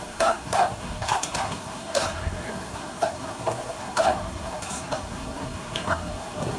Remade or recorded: remade